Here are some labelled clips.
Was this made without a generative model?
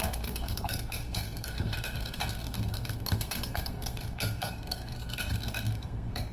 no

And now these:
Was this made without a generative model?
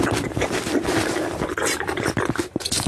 yes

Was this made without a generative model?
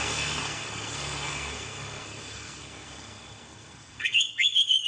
no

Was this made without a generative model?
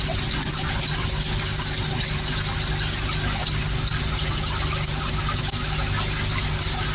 yes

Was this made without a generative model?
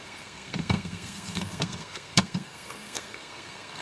no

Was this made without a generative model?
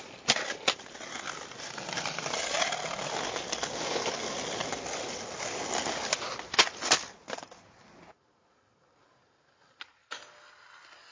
yes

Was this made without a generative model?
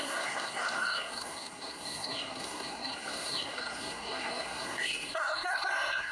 no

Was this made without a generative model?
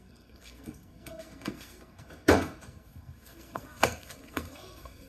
no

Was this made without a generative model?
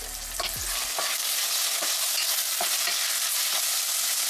yes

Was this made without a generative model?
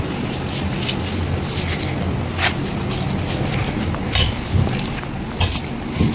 yes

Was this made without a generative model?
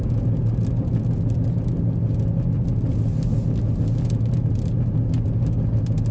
yes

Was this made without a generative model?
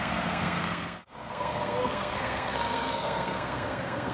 no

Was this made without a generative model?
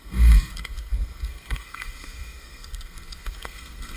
no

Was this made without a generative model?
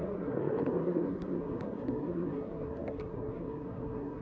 no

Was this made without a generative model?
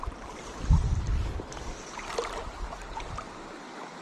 yes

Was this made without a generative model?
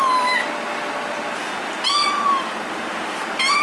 yes